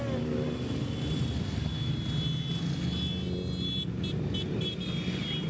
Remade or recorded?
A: recorded